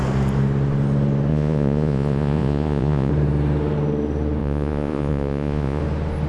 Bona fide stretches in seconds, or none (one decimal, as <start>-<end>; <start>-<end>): 0.0-1.3; 3.1-4.4; 5.8-6.3